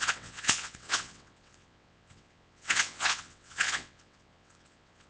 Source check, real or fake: fake